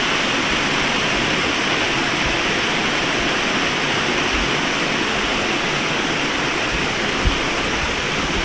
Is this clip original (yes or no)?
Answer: yes